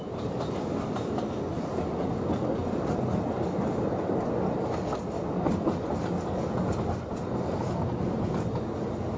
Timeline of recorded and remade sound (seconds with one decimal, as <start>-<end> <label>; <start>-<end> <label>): 0.0-9.2 recorded